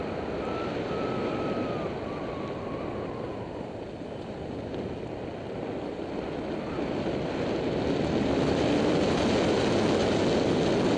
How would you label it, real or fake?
real